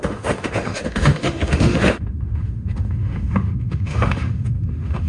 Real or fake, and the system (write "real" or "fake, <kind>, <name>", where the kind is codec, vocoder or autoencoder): fake, autoencoder, DAC-VAE